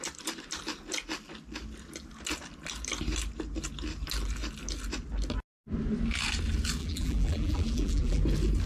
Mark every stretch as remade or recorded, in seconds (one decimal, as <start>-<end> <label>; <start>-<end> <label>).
0.0-6.8 recorded; 6.8-8.2 remade; 8.2-8.7 recorded